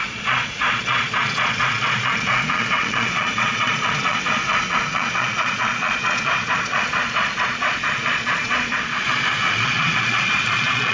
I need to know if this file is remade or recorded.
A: remade